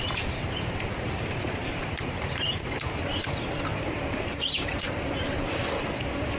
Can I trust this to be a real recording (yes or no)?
no